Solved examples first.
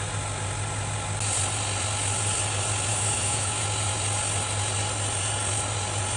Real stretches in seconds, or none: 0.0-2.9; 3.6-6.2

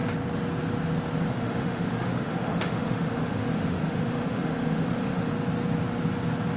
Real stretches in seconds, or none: 0.0-1.3; 5.3-6.6

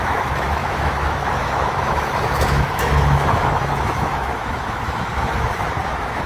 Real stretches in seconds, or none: none